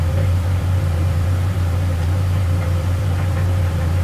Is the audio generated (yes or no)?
yes